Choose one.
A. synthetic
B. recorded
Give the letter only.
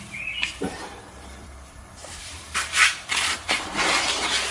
A